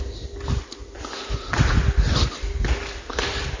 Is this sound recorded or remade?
recorded